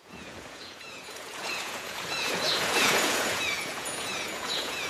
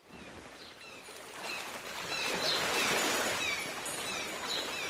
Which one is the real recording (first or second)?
second